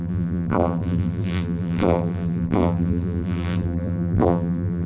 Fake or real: fake